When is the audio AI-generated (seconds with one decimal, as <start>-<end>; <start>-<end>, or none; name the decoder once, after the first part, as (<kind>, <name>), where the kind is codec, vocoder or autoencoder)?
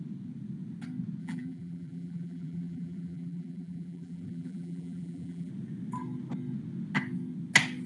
1.2-5.5 (vocoder, BigVGAN v2)